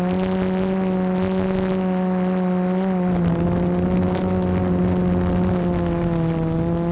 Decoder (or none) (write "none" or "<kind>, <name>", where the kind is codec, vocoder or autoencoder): none